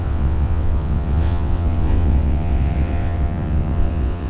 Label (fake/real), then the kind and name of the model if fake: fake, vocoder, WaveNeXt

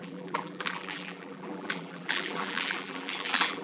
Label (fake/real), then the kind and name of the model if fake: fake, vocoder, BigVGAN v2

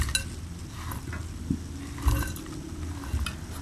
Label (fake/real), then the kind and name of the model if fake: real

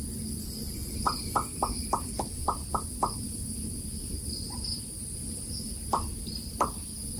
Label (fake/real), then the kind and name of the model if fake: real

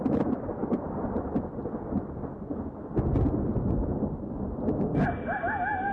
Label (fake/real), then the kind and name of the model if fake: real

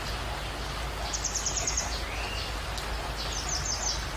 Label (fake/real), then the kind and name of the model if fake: real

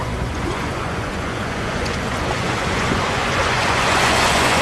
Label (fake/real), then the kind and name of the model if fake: fake, vocoder, Vocos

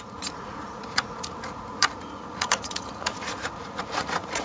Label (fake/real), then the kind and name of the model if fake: fake, vocoder, Vocos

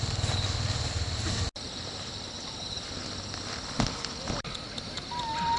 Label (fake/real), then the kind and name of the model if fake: real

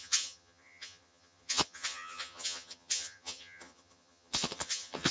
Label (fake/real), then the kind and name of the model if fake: fake, vocoder, HiFi-GAN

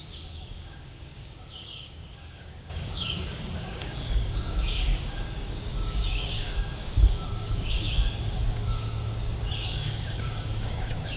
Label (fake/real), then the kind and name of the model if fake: fake, codec, DAC